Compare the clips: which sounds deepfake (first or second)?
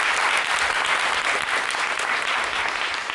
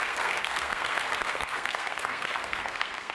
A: second